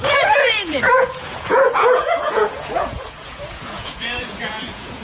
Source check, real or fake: fake